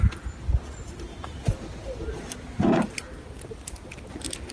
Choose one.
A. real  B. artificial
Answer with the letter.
A